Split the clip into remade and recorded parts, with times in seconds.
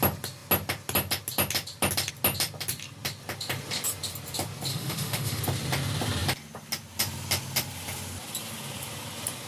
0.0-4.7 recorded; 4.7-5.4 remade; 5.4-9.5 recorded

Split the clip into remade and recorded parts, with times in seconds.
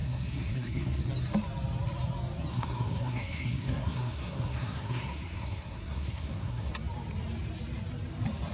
0.0-1.1 remade; 1.1-2.5 recorded; 2.5-6.7 remade; 6.7-8.5 recorded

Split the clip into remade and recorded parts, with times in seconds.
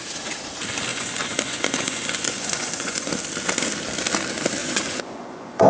0.0-0.9 recorded; 0.9-3.1 remade; 3.1-4.6 recorded; 4.6-5.7 remade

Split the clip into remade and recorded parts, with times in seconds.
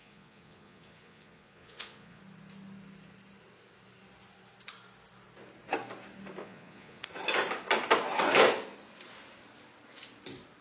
0.0-2.2 remade; 2.2-6.4 recorded; 6.4-7.0 remade; 7.0-10.6 recorded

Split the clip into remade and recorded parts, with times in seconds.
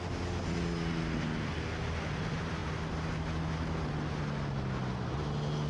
0.0-5.7 recorded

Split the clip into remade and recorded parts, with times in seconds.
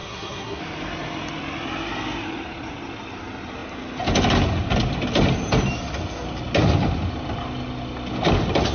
0.0-0.6 remade; 0.6-8.7 recorded